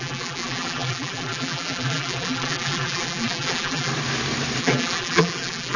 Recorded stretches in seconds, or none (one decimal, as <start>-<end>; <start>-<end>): 3.9-4.6

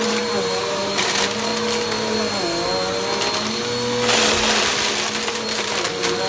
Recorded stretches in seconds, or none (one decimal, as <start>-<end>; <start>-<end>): 1.5-5.3

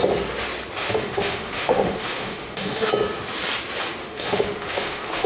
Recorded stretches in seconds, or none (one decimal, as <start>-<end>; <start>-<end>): 0.0-0.8; 2.9-4.0

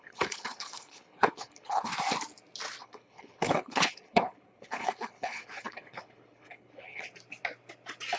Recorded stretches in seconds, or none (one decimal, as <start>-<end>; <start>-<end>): 1.9-2.8; 7.1-8.2

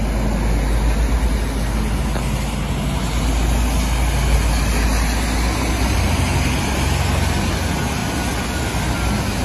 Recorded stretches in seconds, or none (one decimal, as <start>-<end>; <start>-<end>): 0.0-9.4